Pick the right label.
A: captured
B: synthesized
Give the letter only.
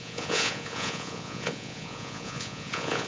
B